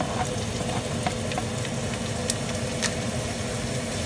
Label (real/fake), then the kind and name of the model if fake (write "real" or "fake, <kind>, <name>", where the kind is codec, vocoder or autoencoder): real